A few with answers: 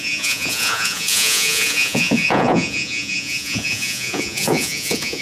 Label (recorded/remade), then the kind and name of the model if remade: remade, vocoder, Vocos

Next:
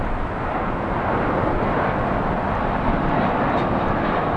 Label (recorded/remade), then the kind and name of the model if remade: recorded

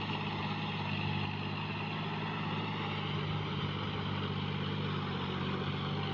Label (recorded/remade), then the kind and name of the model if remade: recorded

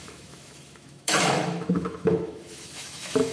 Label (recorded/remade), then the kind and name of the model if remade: remade, autoencoder, DAC-VAE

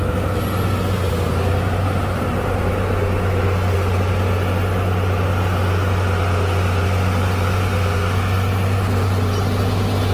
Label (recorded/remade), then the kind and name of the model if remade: recorded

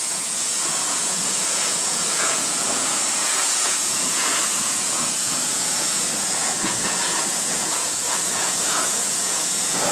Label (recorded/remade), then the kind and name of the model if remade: remade, vocoder, Vocos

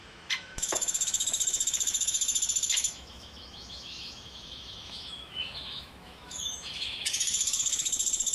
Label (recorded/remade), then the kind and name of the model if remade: remade, autoencoder, DAC-VAE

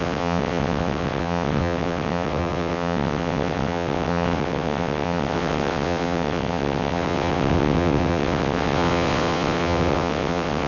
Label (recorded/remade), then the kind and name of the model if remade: remade, vocoder, WaveNeXt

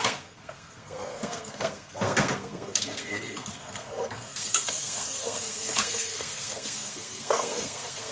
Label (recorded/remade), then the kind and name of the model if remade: remade, codec, SNAC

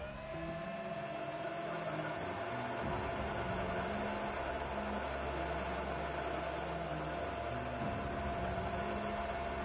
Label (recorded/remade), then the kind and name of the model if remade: recorded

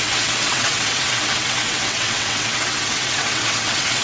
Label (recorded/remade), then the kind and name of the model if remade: remade, vocoder, WaveNeXt